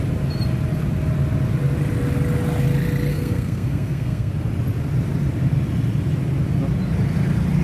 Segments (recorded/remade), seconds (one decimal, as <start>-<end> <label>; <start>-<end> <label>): 0.0-3.1 recorded; 3.1-4.3 remade; 4.3-7.6 recorded